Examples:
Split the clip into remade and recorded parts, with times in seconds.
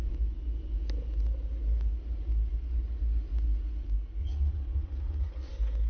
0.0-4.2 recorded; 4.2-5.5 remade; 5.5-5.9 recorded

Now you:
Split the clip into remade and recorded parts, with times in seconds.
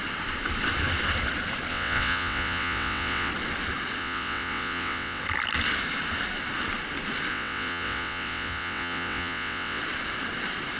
0.0-1.7 recorded; 1.7-3.3 remade; 3.3-4.0 recorded; 4.0-5.2 remade; 5.2-7.3 recorded; 7.3-9.8 remade; 9.8-10.8 recorded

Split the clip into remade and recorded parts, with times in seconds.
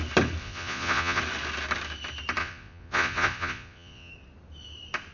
0.0-0.4 recorded; 0.4-1.2 remade; 1.2-2.4 recorded; 2.4-4.1 remade; 4.1-5.1 recorded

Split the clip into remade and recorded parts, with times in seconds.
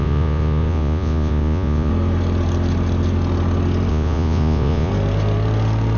0.0-1.9 remade; 1.9-3.9 recorded; 3.9-4.9 remade; 4.9-6.0 recorded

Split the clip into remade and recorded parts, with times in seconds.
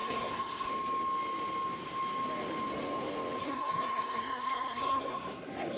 0.0-0.7 remade; 0.7-3.4 recorded; 3.4-5.8 remade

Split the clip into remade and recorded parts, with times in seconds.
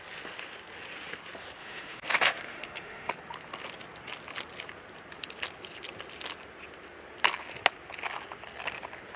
0.0-1.6 recorded; 1.6-3.1 remade; 3.1-9.2 recorded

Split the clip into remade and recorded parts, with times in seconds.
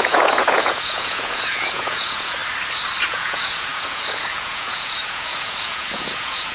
0.0-2.4 remade; 2.4-3.1 recorded; 3.1-6.5 remade